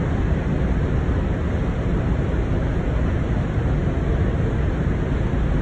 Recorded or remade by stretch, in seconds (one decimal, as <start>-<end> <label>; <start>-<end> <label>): 0.0-5.6 recorded